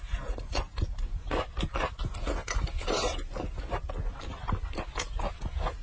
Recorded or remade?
recorded